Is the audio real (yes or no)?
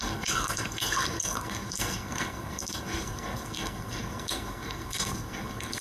no